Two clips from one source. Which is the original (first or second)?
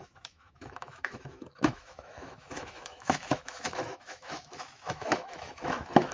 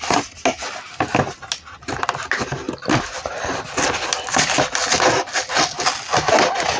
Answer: second